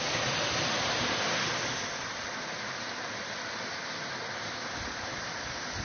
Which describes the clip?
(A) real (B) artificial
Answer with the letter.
A